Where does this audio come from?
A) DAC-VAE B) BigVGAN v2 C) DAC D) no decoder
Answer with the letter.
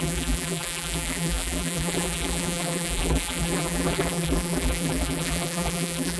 B